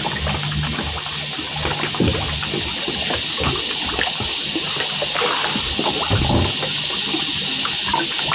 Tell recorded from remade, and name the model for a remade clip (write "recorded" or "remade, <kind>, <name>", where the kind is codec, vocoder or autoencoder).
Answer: recorded